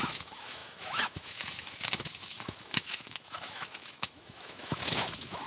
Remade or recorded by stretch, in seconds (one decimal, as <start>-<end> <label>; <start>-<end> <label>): 0.0-5.5 remade